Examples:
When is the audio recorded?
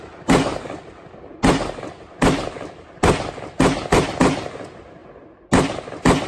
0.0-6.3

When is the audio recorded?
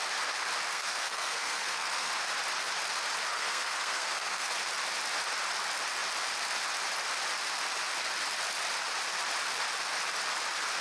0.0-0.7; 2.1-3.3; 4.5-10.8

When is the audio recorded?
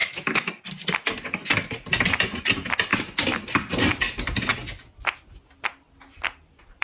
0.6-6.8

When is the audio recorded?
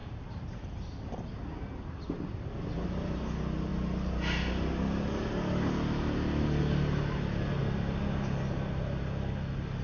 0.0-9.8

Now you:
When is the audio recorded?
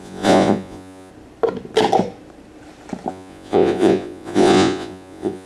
1.1-3.1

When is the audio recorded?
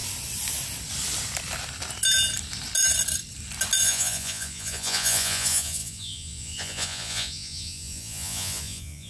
0.0-3.8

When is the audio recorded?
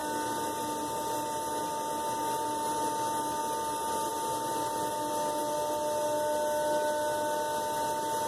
0.0-8.3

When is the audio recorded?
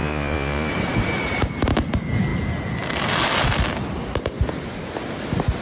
0.7-5.6